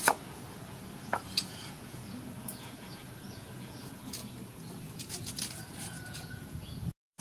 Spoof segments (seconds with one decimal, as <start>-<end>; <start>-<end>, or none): 0.0-7.2